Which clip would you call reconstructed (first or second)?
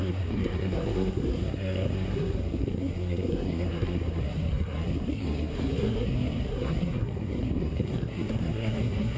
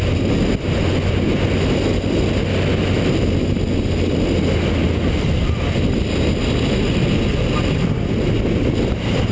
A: first